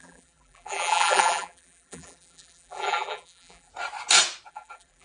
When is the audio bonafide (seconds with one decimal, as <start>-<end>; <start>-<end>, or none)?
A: 3.7-4.5